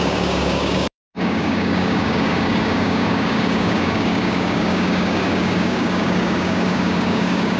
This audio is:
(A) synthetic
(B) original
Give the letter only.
A